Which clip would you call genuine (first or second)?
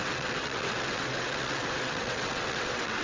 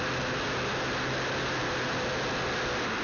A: second